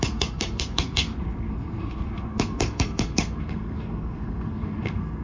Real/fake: fake